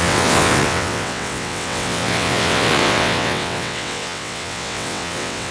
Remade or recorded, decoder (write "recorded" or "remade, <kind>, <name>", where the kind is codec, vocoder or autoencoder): remade, vocoder, WaveNeXt